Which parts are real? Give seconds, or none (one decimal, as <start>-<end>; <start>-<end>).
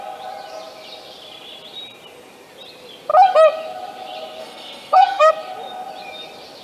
0.0-4.4; 5.3-6.6